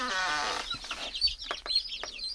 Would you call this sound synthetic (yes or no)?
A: no